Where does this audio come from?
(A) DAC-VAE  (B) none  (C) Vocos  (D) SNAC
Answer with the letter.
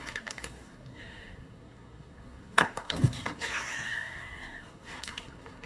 D